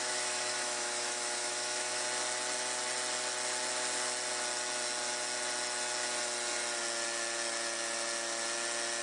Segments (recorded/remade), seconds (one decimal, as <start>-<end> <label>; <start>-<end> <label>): 0.0-2.0 remade; 2.0-9.0 recorded

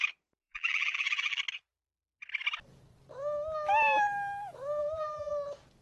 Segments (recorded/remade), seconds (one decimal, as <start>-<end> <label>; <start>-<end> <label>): 0.0-0.4 recorded; 0.4-1.4 remade; 1.4-4.8 recorded; 4.8-5.3 remade; 5.3-5.8 recorded

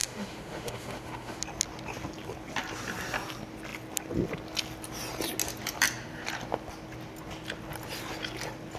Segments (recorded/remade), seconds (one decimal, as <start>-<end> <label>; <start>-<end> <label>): 0.0-1.4 remade; 1.4-8.8 recorded

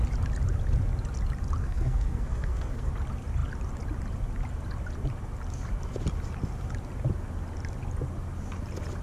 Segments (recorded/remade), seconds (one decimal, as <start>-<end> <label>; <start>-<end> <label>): 0.0-1.6 recorded; 1.6-2.9 remade; 2.9-9.0 recorded

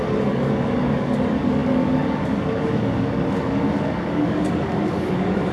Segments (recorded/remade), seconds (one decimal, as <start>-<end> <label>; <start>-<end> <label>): 0.0-5.5 remade

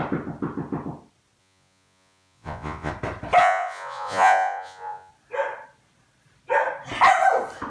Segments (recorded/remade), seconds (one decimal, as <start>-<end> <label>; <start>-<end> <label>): 0.0-1.4 recorded; 1.4-2.9 remade; 2.9-3.4 recorded; 3.4-5.1 remade; 5.1-7.7 recorded

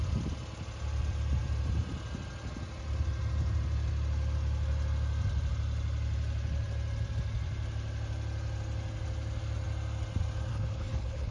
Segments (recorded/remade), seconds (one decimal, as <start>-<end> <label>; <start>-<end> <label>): 0.0-10.5 recorded; 10.5-11.3 remade